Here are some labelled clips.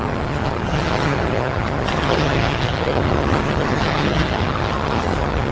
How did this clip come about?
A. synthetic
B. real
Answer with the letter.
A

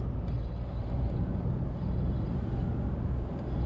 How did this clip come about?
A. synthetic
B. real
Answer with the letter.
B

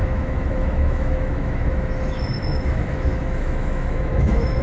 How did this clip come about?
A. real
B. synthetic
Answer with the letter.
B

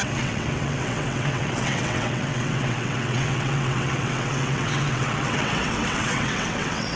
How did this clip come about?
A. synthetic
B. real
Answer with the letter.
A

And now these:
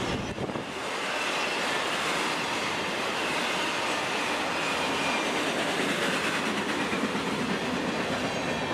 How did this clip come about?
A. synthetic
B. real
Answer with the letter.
B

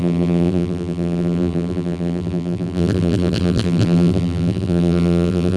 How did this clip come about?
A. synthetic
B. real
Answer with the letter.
A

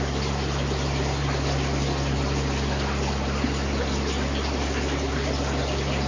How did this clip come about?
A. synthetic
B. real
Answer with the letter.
B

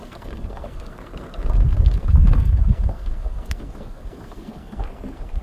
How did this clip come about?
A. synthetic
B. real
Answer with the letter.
A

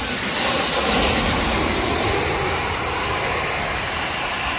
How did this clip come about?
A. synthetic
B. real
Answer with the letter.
B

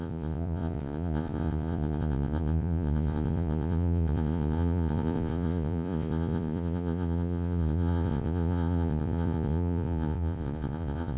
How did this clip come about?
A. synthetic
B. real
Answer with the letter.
A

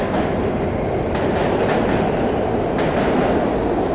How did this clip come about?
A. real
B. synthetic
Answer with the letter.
A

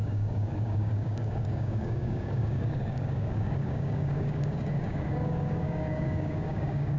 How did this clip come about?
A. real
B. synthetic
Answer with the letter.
B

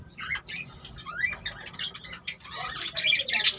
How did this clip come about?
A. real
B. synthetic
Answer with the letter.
A